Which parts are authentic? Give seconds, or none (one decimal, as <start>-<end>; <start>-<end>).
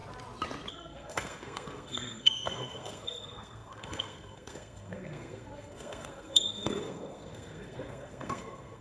0.0-0.7